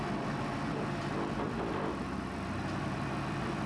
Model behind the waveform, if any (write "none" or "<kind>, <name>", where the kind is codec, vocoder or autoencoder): none